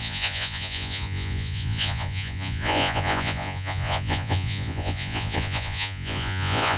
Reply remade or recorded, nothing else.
remade